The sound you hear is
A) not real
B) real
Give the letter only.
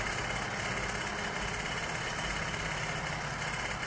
B